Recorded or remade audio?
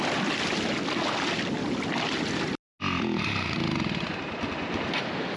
recorded